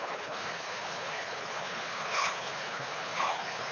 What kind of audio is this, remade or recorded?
remade